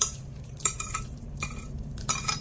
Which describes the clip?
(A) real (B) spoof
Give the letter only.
B